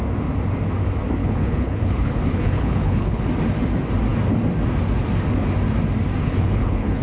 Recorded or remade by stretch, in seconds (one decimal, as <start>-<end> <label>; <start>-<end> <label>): 0.0-1.2 recorded; 1.2-3.3 remade; 3.3-6.2 recorded; 6.2-7.0 remade